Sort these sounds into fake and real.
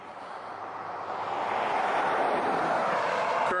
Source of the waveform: real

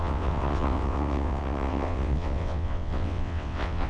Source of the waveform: fake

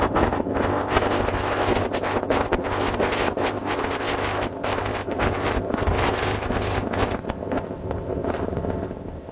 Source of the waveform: fake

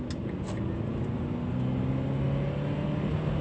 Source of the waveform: real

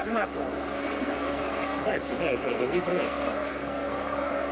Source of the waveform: fake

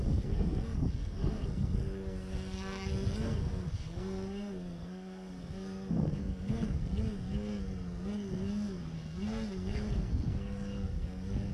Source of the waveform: fake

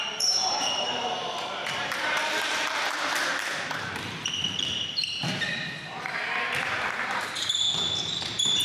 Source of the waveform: fake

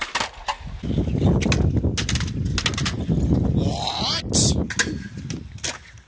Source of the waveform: real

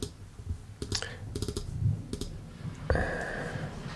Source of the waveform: real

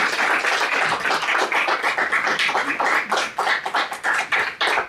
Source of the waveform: real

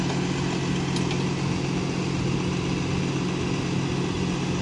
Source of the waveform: real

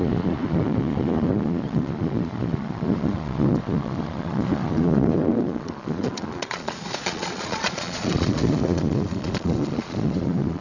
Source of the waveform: fake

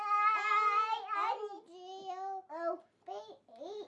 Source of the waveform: real